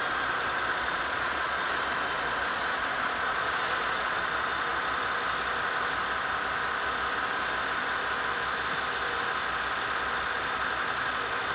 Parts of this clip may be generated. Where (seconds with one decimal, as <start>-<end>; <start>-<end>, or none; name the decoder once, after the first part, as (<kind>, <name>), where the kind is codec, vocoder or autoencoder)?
0.7-1.7 (vocoder, Vocos); 2.5-4.3